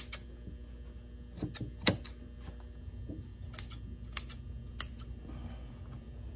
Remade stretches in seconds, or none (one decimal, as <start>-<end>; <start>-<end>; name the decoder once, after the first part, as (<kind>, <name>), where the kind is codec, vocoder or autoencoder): none